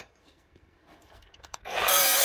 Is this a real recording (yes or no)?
no